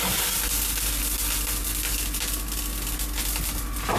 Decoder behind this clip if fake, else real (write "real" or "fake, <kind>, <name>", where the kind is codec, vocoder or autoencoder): real